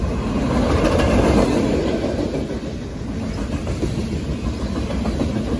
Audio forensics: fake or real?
real